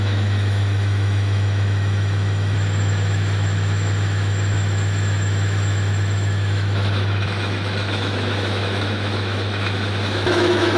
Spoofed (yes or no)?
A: yes